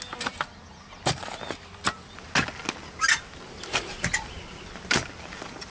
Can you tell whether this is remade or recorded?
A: recorded